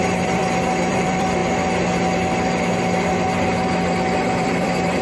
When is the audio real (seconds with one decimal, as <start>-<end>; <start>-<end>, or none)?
0.4-0.9; 1.4-4.4